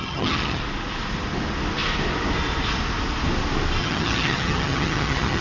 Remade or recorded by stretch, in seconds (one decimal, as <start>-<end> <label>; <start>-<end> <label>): 0.0-0.6 remade; 0.6-3.8 recorded; 3.8-5.4 remade

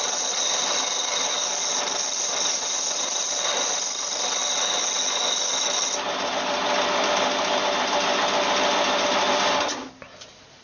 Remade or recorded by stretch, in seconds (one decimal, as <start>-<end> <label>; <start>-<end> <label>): 0.0-10.6 recorded